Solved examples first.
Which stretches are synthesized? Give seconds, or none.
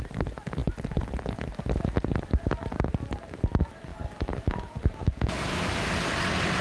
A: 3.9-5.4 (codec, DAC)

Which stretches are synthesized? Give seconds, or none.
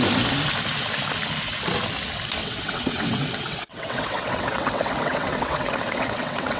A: 2.4-6.6 (vocoder, WaveNeXt)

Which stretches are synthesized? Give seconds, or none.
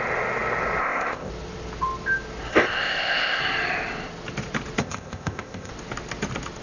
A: 0.8-1.3 (codec, ZipCodec); 2.5-3.4; 4.8-5.7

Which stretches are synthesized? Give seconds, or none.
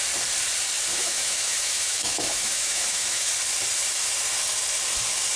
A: 0.9-3.3 (autoencoder, DAC-VAE)